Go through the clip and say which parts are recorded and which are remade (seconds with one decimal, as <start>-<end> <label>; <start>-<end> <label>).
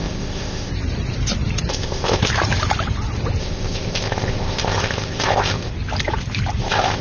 0.0-0.7 remade; 0.7-1.7 recorded; 1.7-2.2 remade; 2.2-3.4 recorded; 3.4-5.7 remade; 5.7-6.6 recorded; 6.6-7.0 remade